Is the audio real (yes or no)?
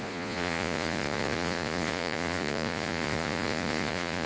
no